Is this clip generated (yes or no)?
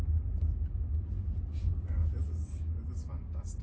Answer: no